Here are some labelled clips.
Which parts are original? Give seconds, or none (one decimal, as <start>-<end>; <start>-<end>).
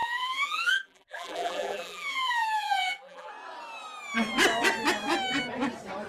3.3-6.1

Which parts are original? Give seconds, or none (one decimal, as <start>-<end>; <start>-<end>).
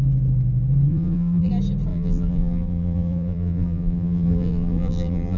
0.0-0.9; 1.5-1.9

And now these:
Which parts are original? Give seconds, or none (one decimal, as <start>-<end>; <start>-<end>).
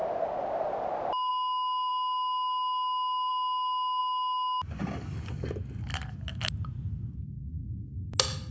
0.0-8.5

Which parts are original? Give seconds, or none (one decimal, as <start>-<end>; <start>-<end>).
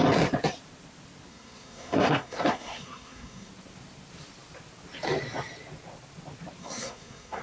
0.0-1.3; 3.5-6.6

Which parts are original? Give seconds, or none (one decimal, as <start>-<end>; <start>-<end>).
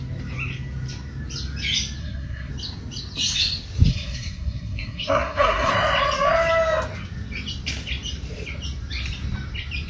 0.0-2.0; 2.5-3.9; 5.7-9.9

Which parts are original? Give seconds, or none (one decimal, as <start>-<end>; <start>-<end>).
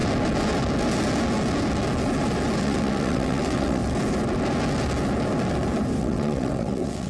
0.0-2.6; 3.8-6.0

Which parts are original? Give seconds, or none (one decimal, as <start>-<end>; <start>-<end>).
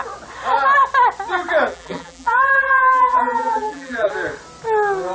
0.0-1.7; 4.1-5.1